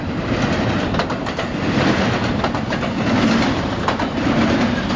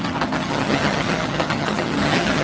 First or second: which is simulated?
second